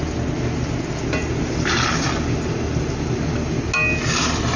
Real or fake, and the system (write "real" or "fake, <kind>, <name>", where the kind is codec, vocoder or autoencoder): real